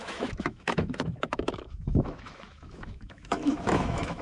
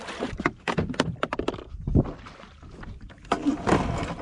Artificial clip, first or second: first